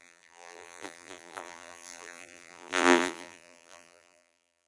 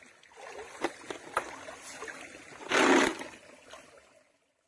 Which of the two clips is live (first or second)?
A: second